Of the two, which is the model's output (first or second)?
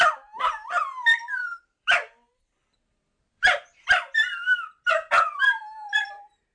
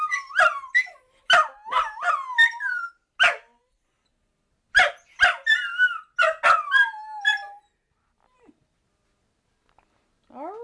first